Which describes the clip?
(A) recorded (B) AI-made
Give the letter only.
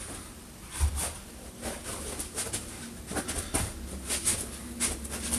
A